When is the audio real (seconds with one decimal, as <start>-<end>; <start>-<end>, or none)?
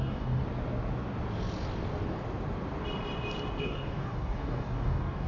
0.4-3.6